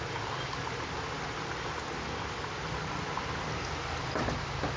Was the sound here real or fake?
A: real